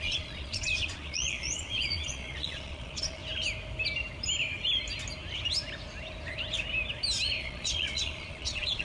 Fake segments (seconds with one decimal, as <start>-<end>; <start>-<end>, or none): 0.0-3.2; 7.4-8.8